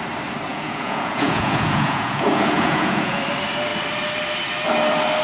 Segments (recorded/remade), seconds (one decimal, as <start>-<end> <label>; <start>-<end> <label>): 0.0-0.5 recorded; 0.5-3.2 remade; 3.2-5.2 recorded